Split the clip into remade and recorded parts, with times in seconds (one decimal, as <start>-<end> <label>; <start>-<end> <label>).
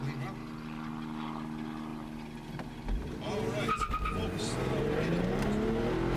0.0-6.2 recorded